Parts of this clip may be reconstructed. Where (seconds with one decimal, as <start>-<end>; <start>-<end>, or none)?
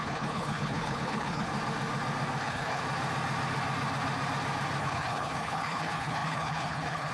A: 0.0-1.5; 2.4-2.8; 4.8-7.1